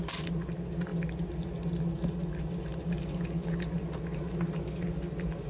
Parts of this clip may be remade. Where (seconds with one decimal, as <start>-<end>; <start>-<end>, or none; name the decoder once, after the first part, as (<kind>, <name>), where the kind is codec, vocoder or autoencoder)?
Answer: none